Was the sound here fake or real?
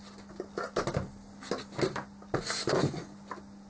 real